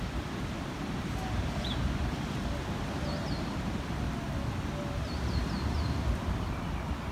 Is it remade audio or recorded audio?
recorded